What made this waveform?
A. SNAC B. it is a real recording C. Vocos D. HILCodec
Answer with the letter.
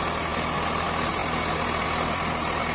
B